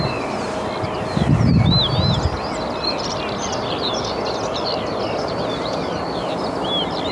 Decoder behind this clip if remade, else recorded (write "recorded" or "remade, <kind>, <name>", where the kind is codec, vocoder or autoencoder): recorded